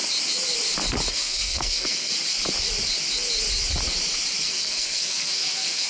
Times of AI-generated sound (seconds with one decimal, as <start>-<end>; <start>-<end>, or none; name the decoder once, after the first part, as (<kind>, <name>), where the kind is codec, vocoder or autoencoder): 1.1-2.1 (codec, SNAC); 4.4-5.9